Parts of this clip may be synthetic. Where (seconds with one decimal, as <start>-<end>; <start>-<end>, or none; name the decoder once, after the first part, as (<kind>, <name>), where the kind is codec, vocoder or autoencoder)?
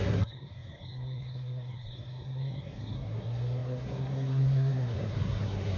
0.0-5.8 (codec, SNAC)